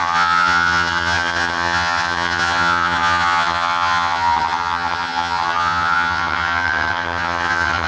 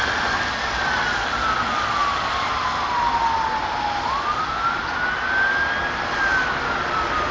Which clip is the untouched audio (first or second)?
second